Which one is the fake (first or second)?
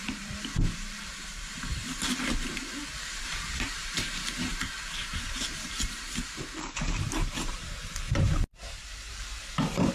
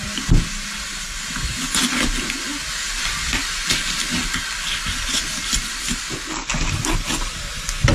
first